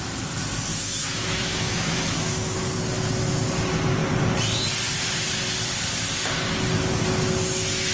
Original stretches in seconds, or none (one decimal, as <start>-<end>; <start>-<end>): 0.0-0.7; 2.8-7.9